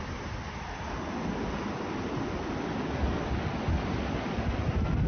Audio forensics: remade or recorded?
recorded